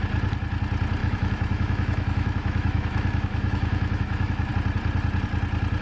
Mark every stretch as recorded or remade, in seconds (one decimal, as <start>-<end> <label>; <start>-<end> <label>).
0.0-1.0 recorded; 1.0-4.5 remade; 4.5-5.8 recorded